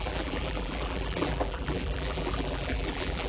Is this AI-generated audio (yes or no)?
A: yes